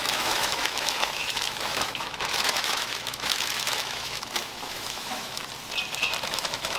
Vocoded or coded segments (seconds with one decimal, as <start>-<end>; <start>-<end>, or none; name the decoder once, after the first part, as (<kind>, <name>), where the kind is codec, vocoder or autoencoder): 0.0-5.4 (autoencoder, DAC-VAE); 6.3-6.8